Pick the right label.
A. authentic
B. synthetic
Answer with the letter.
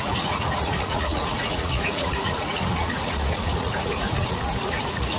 B